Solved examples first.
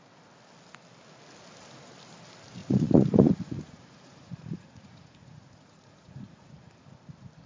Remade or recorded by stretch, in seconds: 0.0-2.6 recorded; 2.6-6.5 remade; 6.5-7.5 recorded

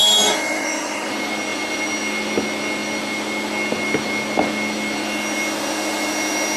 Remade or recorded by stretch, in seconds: 0.0-1.1 remade; 1.1-6.6 recorded